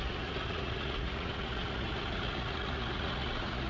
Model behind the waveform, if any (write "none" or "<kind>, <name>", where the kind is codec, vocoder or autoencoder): vocoder, Vocos